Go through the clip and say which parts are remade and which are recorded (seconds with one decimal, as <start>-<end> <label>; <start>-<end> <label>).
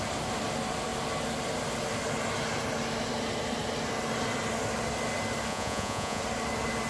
0.0-5.5 recorded; 5.5-6.2 remade; 6.2-6.9 recorded